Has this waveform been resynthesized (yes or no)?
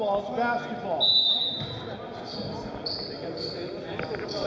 no